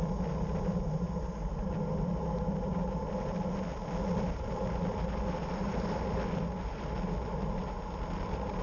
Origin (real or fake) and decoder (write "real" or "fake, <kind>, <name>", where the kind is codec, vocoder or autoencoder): real